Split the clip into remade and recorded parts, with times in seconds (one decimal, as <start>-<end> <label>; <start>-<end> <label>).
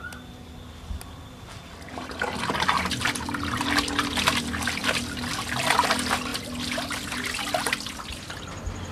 0.0-8.9 remade